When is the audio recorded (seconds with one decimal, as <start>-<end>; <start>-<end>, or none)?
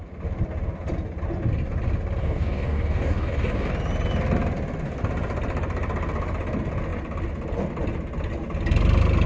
0.0-2.2; 3.7-9.3